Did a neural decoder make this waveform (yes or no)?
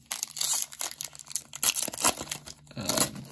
no